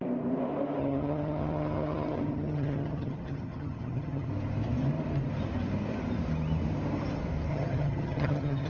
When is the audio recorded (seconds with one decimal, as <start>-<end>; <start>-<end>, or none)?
0.0-0.8; 4.3-7.5